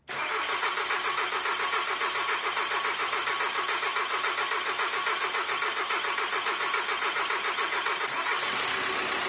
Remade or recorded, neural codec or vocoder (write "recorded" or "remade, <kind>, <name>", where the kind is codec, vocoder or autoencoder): recorded